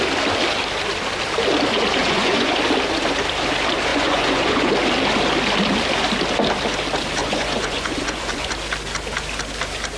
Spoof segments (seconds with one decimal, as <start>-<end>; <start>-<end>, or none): 2.0-2.6; 3.9-4.7; 7.2-8.5